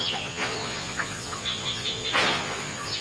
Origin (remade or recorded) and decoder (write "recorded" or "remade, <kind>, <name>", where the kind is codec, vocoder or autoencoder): remade, vocoder, Vocos